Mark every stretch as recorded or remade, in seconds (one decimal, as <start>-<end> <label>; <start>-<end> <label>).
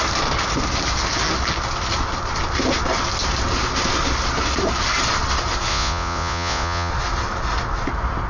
0.0-5.7 recorded; 5.7-6.9 remade; 6.9-8.3 recorded